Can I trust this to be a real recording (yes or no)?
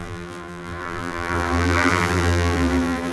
no